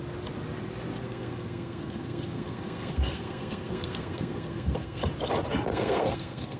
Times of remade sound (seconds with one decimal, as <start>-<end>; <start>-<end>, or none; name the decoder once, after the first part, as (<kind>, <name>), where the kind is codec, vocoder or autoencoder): 1.0-5.0 (codec, SNAC); 5.7-6.6